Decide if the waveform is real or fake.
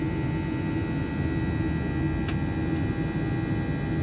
real